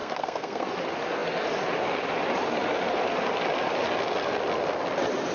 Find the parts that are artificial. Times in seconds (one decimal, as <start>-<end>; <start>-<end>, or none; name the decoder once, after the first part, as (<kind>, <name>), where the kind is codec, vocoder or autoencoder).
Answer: 0.0-0.7 (codec, SNAC)

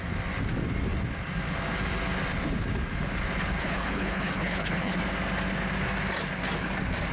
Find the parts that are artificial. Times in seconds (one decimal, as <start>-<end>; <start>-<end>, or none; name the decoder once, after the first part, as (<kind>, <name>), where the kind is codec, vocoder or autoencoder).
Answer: 3.6-5.0 (codec, HILCodec)

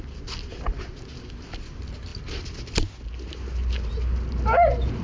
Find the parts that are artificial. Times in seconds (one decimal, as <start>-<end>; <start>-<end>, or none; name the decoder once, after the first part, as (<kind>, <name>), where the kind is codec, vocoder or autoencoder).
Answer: none